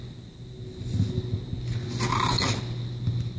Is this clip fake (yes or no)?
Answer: no